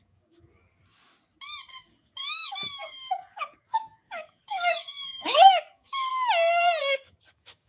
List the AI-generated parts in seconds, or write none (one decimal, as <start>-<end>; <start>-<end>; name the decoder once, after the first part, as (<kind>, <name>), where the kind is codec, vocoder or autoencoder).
0.0-0.8 (codec, DAC); 1.7-6.1; 6.8-7.7